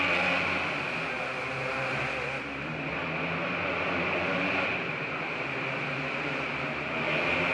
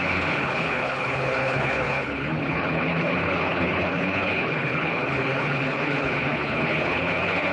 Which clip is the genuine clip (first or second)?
first